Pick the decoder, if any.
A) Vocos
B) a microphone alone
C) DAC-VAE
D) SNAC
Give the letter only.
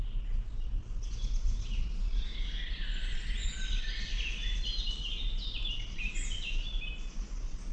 B